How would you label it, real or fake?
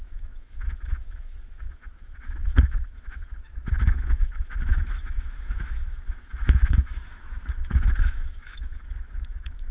fake